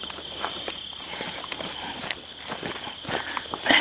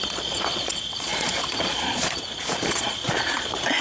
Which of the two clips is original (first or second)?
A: first